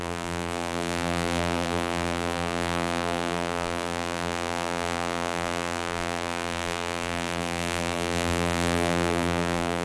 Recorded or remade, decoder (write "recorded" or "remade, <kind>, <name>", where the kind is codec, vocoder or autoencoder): remade, vocoder, BigVGAN v2